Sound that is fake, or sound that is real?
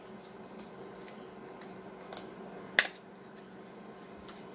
real